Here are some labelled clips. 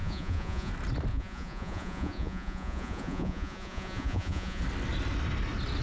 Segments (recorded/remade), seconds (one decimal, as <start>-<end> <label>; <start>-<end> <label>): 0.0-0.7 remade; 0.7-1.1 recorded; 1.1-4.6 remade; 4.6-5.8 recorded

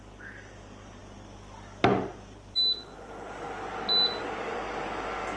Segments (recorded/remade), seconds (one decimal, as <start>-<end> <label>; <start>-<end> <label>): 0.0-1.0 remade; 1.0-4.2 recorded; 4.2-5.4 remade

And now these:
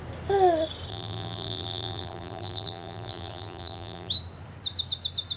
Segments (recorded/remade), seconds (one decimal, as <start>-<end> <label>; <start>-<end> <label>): 0.0-0.9 recorded; 0.9-4.1 remade; 4.1-5.4 recorded